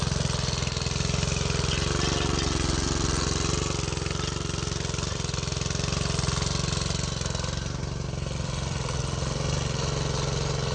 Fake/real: real